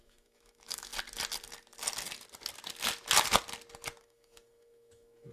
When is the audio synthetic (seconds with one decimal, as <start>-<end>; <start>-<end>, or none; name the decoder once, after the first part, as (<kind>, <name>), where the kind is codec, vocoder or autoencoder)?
0.0-0.9 (autoencoder, DAC-VAE); 4.0-5.3